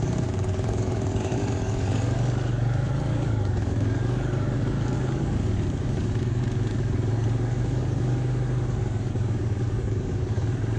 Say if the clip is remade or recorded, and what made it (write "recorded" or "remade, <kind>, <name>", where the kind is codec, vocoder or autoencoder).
remade, codec, DAC